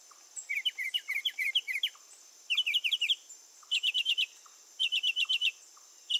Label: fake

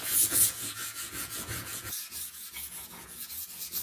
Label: fake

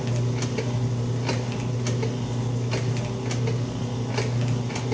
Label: real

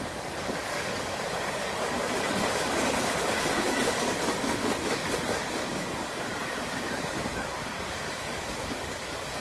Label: fake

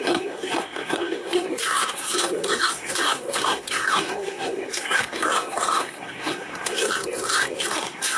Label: fake